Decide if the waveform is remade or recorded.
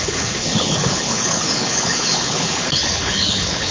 remade